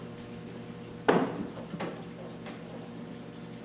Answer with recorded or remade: recorded